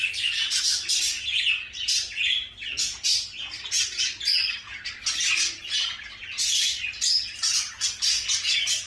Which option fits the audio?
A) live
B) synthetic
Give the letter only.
A